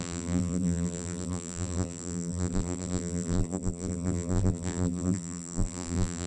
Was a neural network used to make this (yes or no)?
yes